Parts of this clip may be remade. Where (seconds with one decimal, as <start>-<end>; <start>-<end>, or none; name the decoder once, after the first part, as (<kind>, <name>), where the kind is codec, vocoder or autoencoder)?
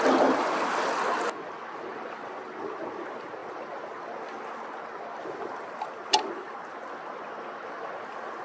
none